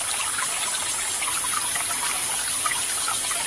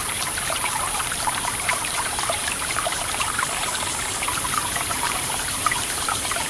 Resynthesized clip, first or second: second